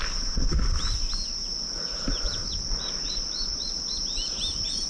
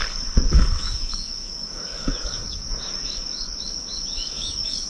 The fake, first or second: second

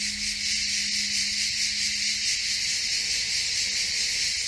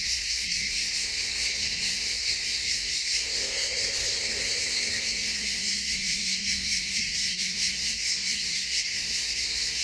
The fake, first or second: second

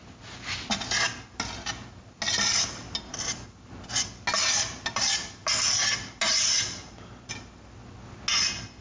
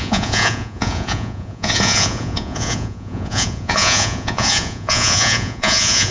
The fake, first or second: second